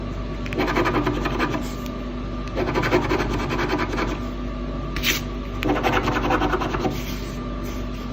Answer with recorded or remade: recorded